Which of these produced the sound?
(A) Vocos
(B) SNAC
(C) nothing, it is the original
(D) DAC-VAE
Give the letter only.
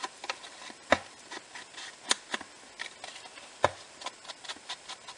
C